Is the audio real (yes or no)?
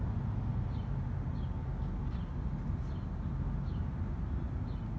yes